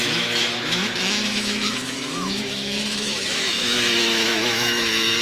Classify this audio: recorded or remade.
remade